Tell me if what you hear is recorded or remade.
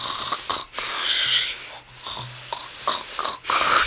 recorded